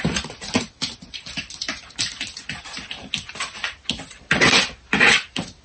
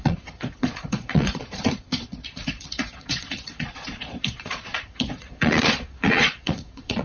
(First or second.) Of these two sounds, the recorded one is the first